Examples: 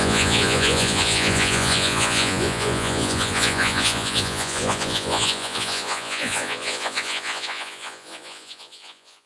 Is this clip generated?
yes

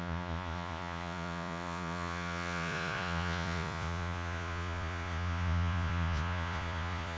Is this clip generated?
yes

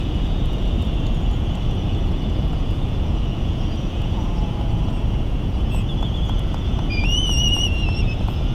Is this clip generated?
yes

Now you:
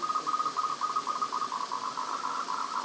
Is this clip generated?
no